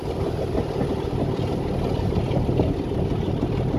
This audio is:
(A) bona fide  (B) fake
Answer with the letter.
A